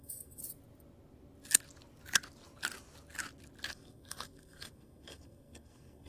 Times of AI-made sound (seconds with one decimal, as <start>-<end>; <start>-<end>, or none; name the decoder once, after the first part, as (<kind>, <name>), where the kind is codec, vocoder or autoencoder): 0.0-0.4 (codec, SNAC); 3.7-6.1